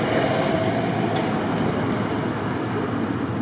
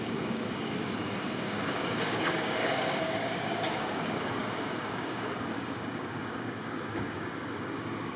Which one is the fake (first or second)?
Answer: second